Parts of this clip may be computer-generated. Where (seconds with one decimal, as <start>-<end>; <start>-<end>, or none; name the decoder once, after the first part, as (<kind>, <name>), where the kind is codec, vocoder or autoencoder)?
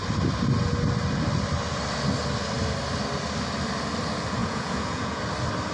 4.4-5.2 (vocoder, Vocos)